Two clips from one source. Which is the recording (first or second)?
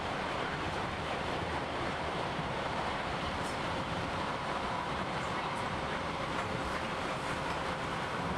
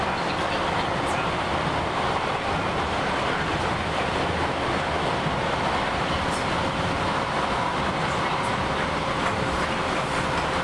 second